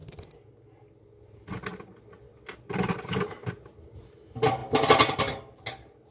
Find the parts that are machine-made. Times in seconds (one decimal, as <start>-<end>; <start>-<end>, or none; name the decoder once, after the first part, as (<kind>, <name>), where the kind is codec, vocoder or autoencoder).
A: 4.6-5.2 (vocoder, BigVGAN v2)